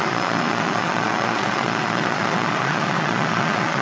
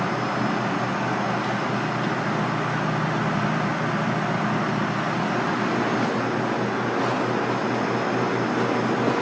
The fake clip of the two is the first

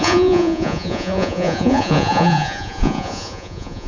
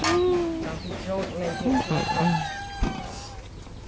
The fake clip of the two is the first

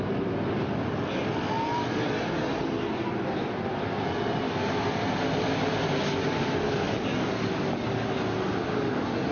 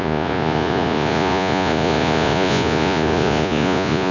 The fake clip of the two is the second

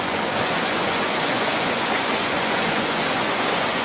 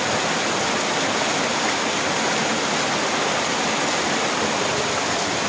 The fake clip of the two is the first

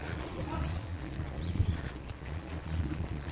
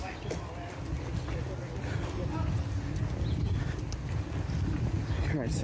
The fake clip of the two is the first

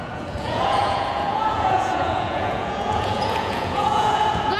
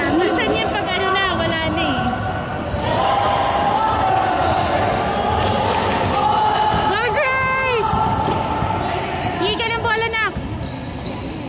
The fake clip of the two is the first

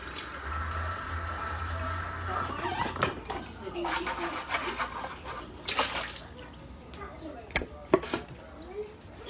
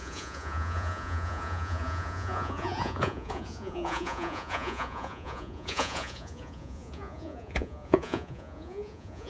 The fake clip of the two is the second